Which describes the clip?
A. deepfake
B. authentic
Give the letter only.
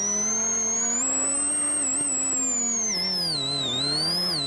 B